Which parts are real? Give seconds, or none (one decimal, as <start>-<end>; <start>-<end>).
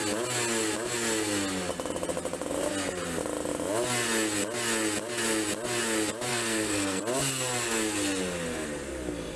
0.0-6.3; 7.0-9.4